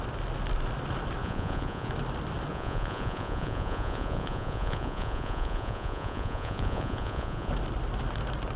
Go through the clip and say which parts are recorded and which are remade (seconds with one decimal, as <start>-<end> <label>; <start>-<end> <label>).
0.0-1.2 recorded; 1.2-1.9 remade; 1.9-2.5 recorded; 2.5-7.5 remade; 7.5-8.6 recorded